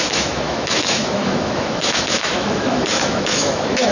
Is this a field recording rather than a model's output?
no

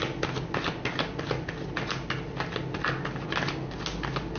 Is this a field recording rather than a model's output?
yes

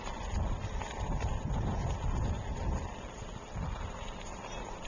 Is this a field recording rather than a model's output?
yes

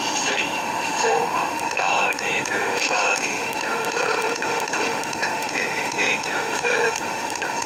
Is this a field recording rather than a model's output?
no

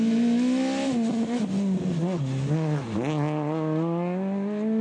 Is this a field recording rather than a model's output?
yes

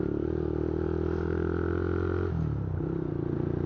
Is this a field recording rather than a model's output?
yes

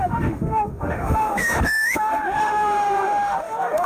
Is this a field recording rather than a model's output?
no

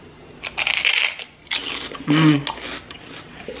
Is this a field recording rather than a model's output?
yes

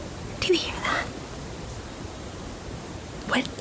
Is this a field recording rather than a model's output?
yes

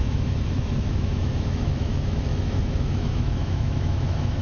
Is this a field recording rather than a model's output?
no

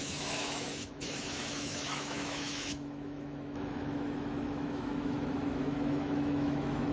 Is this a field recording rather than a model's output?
no